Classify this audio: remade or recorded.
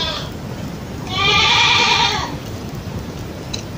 recorded